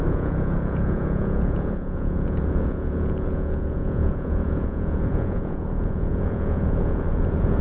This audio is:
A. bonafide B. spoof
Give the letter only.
B